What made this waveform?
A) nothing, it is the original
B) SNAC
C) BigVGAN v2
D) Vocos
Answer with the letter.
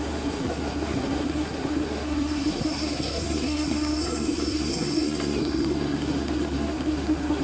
B